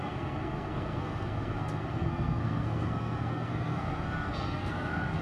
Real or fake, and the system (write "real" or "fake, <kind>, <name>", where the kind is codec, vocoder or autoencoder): fake, codec, SNAC